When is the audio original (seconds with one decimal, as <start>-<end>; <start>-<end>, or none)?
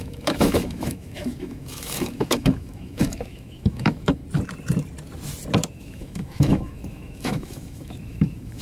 4.2-5.7